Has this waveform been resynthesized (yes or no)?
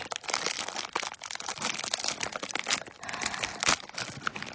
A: no